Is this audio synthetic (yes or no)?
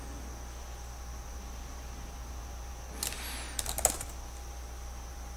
no